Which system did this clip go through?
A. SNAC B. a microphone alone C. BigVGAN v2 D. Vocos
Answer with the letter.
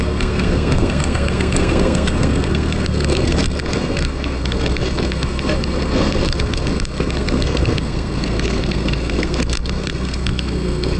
A